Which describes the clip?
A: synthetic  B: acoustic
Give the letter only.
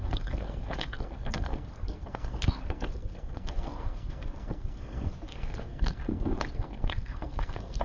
A